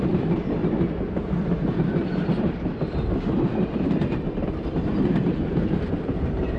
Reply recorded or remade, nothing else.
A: remade